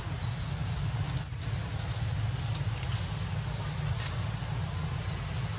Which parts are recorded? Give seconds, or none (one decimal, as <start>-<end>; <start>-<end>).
0.0-5.6